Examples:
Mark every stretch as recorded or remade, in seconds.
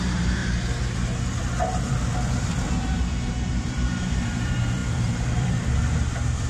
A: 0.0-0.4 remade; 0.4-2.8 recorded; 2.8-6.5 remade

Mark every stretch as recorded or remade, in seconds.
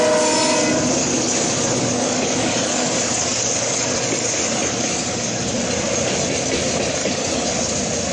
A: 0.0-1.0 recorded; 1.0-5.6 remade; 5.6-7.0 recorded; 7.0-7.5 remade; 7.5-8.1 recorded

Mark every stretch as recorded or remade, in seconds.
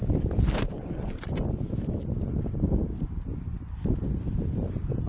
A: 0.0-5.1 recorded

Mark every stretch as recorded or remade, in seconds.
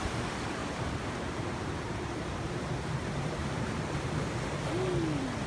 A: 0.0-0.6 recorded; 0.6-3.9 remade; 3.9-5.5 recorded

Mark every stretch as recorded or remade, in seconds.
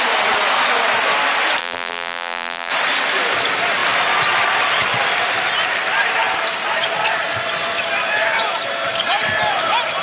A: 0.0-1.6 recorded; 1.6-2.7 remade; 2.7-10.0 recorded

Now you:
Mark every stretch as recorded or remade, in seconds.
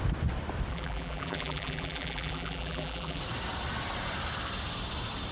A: 0.0-0.7 recorded; 0.7-3.2 remade; 3.2-5.3 recorded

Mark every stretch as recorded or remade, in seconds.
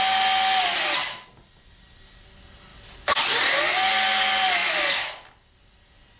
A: 0.0-6.2 recorded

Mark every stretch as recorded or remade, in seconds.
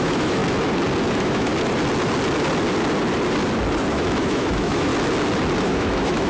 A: 0.0-0.4 remade; 0.4-1.1 recorded; 1.1-1.5 remade; 1.5-3.9 recorded; 3.9-4.9 remade; 4.9-5.6 recorded; 5.6-6.3 remade